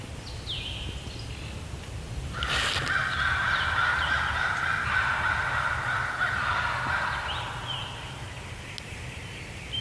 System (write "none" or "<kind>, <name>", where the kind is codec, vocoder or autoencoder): none